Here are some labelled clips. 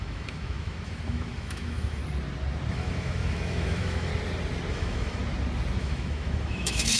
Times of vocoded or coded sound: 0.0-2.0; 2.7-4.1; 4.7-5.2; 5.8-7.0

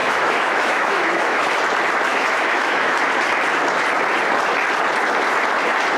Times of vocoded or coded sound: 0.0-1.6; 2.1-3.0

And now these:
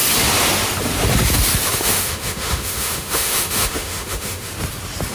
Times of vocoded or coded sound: 1.7-4.5

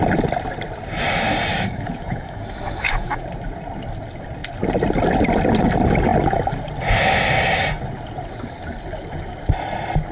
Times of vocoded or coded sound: 1.5-3.2

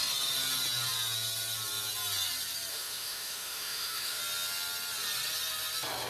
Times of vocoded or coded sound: 2.7-4.2